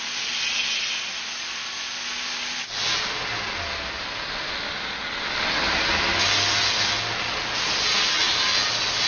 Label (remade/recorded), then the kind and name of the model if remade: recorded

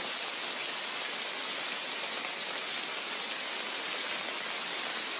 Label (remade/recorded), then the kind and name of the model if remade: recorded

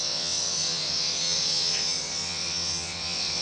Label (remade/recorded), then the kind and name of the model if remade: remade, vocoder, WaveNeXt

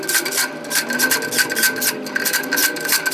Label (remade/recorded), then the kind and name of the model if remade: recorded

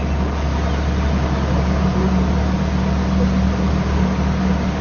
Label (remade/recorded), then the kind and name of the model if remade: recorded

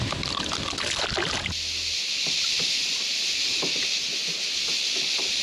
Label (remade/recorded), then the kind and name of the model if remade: recorded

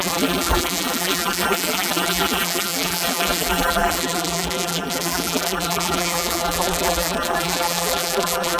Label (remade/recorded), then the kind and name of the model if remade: remade, vocoder, BigVGAN v2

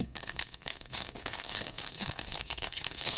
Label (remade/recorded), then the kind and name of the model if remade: remade, codec, SNAC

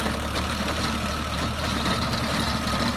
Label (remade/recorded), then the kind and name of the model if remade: remade, vocoder, BigVGAN v2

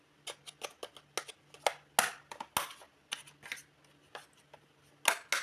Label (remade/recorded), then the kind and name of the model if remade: recorded